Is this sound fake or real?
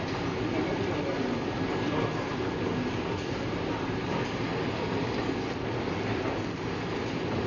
real